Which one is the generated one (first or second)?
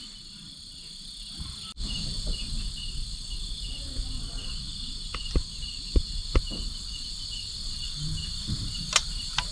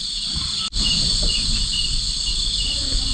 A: second